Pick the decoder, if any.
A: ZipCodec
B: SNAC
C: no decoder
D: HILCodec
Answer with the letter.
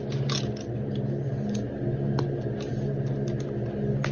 C